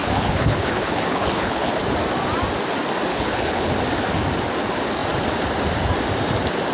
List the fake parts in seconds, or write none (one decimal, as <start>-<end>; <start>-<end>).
0.0-1.7; 3.1-3.7